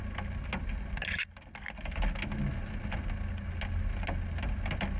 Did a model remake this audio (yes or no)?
no